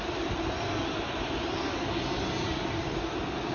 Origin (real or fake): real